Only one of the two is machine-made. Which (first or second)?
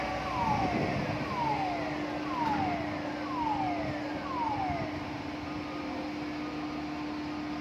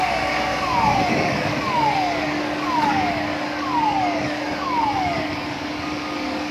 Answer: second